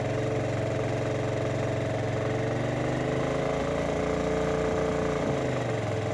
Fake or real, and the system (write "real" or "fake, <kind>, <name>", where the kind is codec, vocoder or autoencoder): real